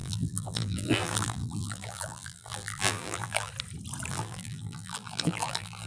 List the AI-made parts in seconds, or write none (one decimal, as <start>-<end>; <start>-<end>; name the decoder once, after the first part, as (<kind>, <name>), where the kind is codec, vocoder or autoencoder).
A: 0.0-3.5 (vocoder, BigVGAN v2); 4.1-5.9